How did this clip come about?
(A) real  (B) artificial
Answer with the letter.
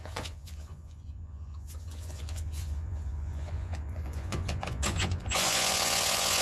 B